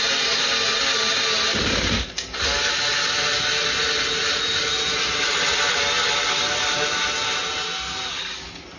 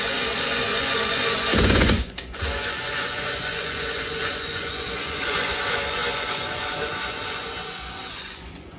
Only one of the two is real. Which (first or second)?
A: first